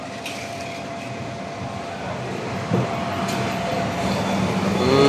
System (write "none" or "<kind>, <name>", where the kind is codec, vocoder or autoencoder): none